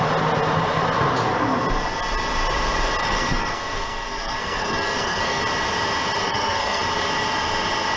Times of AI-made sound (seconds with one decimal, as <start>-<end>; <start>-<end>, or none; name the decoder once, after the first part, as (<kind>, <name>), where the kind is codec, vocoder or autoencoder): 3.0-5.4 (codec, SNAC); 6.2-6.8